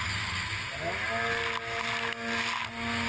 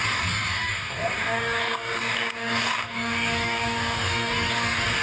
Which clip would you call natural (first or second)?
first